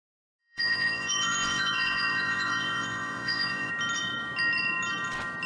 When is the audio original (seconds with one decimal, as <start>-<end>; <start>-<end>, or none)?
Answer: 0.0-0.4; 3.7-5.5